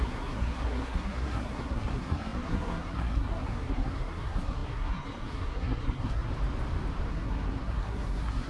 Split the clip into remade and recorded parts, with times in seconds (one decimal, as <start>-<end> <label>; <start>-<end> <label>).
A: 0.0-6.3 remade; 6.3-7.1 recorded; 7.1-8.5 remade